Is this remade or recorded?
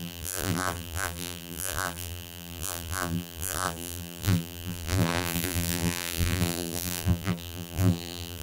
remade